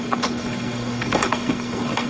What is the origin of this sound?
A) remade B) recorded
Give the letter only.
A